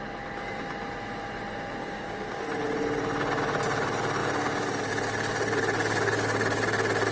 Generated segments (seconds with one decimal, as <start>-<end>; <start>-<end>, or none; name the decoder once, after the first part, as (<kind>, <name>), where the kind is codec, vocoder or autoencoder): 1.8-2.4 (codec, DAC)